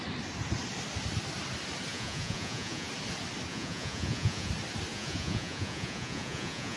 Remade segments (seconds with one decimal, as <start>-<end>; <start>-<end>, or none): 1.9-2.9; 3.5-4.5; 4.9-6.8